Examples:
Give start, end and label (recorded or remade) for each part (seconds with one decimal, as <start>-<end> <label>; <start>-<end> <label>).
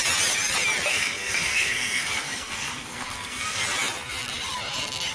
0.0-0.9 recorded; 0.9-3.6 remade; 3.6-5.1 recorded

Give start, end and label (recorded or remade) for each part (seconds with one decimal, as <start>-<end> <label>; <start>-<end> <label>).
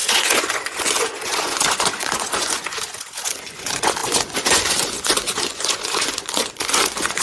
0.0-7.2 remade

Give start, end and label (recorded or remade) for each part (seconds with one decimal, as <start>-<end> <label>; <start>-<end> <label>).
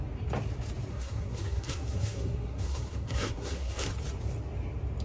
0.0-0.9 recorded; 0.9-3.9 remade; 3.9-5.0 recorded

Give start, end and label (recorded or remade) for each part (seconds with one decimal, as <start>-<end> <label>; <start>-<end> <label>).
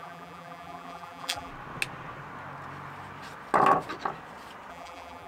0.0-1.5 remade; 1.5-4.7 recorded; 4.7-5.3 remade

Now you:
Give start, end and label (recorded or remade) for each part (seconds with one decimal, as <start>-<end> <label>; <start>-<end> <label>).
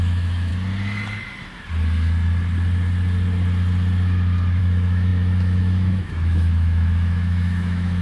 0.0-0.5 remade; 0.5-4.6 recorded; 4.6-8.0 remade